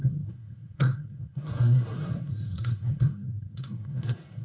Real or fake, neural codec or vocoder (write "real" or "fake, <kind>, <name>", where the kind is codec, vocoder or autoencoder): fake, codec, SNAC